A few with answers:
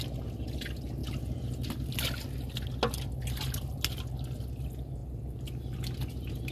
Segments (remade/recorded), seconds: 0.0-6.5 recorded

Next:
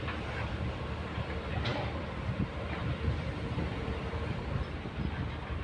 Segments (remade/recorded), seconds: 0.0-5.6 remade

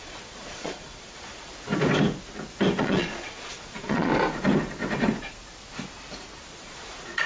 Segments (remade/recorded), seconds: 0.0-1.5 remade; 1.5-2.8 recorded; 2.8-4.1 remade; 4.1-6.4 recorded; 6.4-7.3 remade

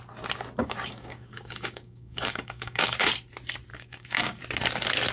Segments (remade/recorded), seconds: 0.0-0.6 recorded; 0.6-3.1 remade; 3.1-3.7 recorded; 3.7-4.4 remade; 4.4-5.1 recorded